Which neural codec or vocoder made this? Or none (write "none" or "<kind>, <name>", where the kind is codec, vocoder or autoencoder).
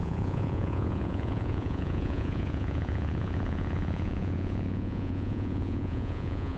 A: vocoder, Vocos